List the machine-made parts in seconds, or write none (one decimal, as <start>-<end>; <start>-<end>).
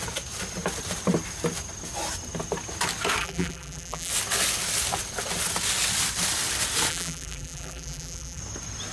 3.2-4.1; 6.9-8.4